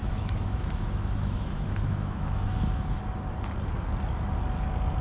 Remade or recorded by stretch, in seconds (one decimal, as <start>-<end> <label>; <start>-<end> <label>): 0.0-3.0 remade; 3.0-5.0 recorded